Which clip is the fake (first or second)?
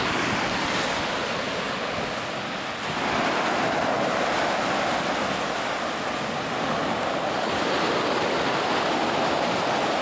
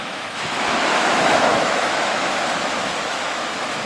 second